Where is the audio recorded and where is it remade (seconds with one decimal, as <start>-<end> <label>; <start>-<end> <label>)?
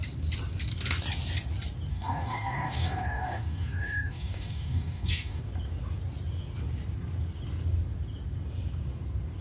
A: 0.0-1.9 recorded; 1.9-5.4 remade; 5.4-9.4 recorded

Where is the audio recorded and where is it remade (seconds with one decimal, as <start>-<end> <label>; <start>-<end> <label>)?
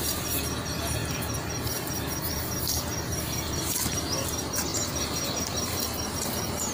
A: 0.0-6.7 recorded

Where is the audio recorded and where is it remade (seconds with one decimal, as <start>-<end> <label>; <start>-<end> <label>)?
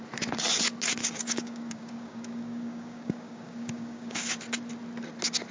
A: 0.0-1.0 recorded; 1.0-4.3 remade; 4.3-5.5 recorded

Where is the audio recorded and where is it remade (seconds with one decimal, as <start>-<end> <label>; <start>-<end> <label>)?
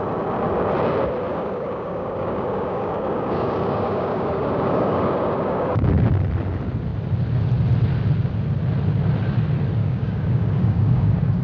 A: 0.0-1.3 recorded; 1.3-5.9 remade; 5.9-9.8 recorded; 9.8-11.4 remade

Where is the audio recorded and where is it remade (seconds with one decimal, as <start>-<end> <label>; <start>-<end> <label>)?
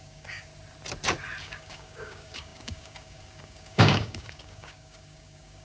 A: 0.0-0.5 remade; 0.5-1.4 recorded; 1.4-5.6 remade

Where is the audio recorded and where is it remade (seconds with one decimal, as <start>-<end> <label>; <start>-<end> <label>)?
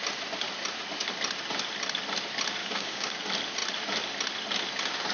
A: 0.0-2.6 recorded; 2.6-3.1 remade; 3.1-5.1 recorded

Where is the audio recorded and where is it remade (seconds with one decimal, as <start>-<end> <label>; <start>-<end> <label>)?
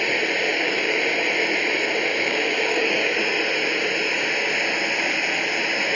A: 0.0-0.5 recorded; 0.5-1.0 remade; 1.0-2.1 recorded; 2.1-3.2 remade; 3.2-5.9 recorded